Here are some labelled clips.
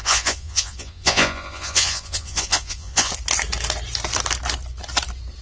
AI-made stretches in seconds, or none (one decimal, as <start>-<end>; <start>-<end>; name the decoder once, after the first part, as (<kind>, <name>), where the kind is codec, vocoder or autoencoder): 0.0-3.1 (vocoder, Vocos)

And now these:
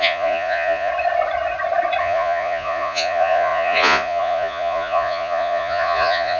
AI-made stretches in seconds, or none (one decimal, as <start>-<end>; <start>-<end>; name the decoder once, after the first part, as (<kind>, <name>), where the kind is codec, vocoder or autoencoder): 0.0-0.9 (vocoder, Vocos); 2.0-6.4

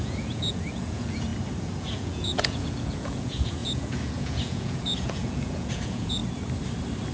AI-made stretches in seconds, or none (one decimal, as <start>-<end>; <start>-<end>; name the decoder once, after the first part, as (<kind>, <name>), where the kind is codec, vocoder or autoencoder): 0.0-1.3 (vocoder, Vocos); 1.8-6.2